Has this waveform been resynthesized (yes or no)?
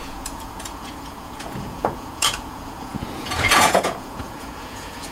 yes